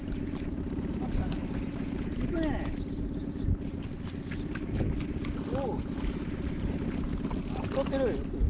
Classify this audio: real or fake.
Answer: real